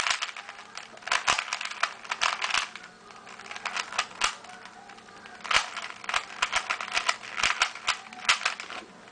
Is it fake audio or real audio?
real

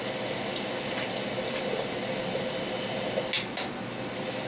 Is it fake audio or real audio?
real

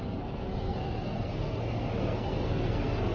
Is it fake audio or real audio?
fake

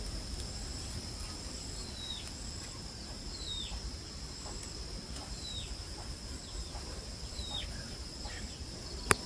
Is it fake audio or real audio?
fake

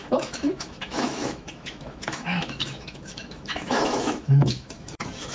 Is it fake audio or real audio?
fake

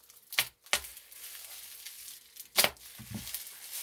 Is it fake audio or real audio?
real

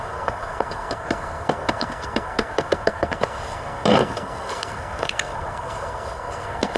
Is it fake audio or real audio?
fake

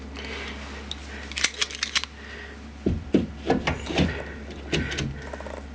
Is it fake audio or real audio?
real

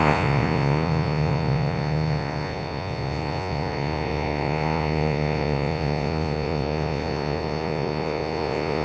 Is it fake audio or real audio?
fake